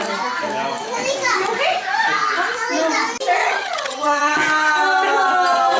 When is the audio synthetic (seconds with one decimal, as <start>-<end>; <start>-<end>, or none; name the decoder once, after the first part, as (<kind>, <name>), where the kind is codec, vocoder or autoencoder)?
3.4-4.4 (vocoder, HiFi-GAN)